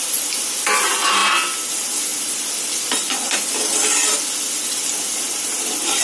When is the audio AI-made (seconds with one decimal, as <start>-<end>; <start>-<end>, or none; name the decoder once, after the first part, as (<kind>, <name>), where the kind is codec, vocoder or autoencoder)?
none